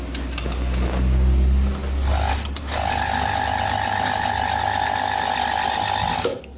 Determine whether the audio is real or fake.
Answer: real